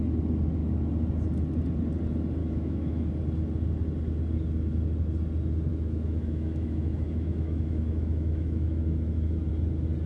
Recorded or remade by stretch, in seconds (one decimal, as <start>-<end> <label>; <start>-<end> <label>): 0.0-2.4 recorded; 2.4-3.1 remade; 3.1-5.7 recorded; 5.7-9.5 remade; 9.5-10.1 recorded